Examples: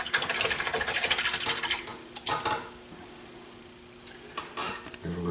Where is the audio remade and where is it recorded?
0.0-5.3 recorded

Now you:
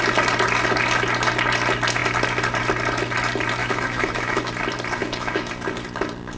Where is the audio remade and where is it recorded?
0.0-3.6 recorded; 3.6-4.5 remade; 4.5-5.0 recorded; 5.0-5.5 remade; 5.5-6.4 recorded

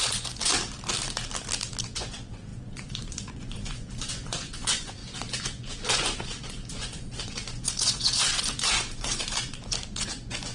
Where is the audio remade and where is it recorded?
0.0-0.5 remade; 0.5-1.8 recorded; 1.8-10.5 remade

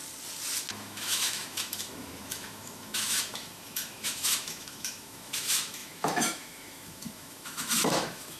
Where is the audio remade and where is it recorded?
0.0-0.7 recorded; 0.7-8.4 remade

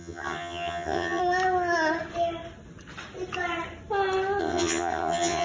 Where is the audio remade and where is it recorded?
0.0-1.2 remade; 1.2-4.4 recorded; 4.4-5.4 remade

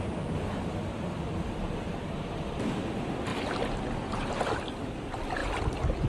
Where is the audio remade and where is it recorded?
0.0-6.1 recorded

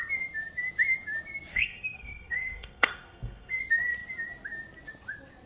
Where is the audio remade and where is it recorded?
0.0-1.5 recorded; 1.5-3.6 remade; 3.6-5.5 recorded

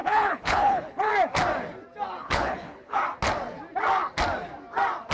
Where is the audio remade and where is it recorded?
0.0-1.1 remade; 1.1-2.2 recorded; 2.2-3.0 remade; 3.0-5.1 recorded